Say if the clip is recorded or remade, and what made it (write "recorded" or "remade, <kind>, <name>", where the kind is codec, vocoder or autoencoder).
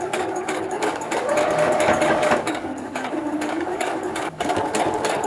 remade, codec, DAC